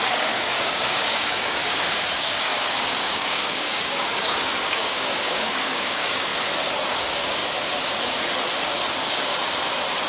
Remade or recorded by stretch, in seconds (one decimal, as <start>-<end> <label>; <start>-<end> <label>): 0.0-6.3 remade; 6.3-6.9 recorded; 6.9-7.4 remade; 7.4-10.1 recorded